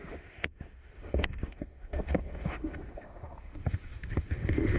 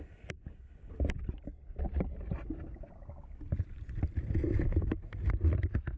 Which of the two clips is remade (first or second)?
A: first